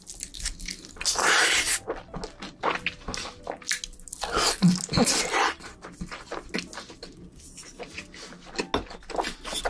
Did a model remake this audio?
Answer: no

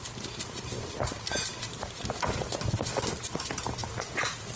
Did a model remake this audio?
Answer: no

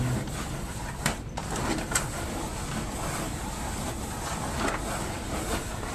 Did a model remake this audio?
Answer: no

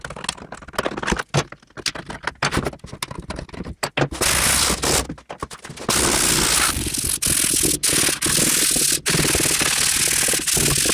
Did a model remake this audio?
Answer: no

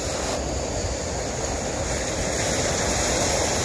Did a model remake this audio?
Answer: no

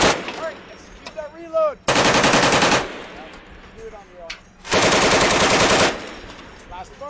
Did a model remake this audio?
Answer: no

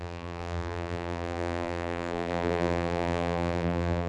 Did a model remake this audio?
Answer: yes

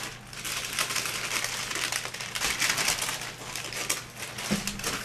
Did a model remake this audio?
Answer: no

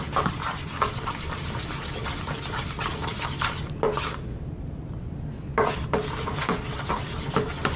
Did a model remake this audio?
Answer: no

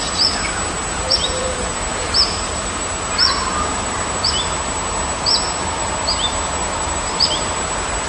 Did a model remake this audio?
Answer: yes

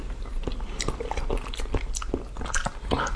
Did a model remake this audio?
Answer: no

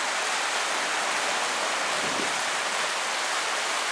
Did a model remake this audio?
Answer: no